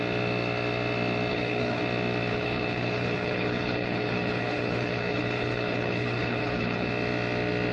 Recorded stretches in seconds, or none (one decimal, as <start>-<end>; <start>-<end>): 0.0-1.3; 1.8-2.3; 6.9-7.7